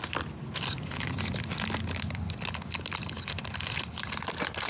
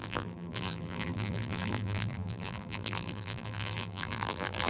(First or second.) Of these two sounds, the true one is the first